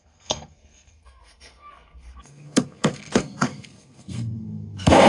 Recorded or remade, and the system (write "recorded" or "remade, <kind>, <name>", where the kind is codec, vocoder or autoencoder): remade, codec, SNAC